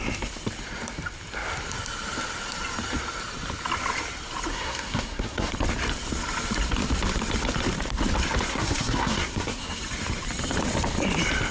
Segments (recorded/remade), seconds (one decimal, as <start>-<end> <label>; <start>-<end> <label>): 0.0-4.5 recorded; 4.5-5.5 remade; 5.5-8.5 recorded; 8.5-9.8 remade; 9.8-11.5 recorded